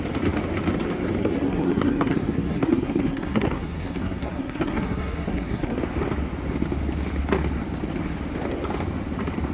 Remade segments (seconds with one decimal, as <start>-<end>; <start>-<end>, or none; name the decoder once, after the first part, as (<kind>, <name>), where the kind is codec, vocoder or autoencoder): 1.2-5.8 (codec, SNAC)